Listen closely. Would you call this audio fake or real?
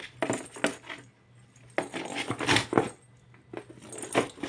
real